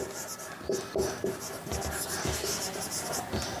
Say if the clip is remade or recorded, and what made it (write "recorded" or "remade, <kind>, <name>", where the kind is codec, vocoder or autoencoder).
recorded